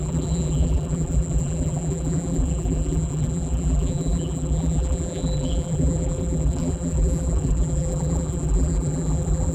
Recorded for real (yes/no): no